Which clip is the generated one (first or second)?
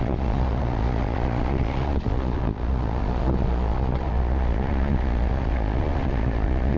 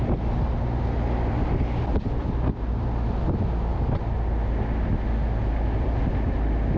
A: first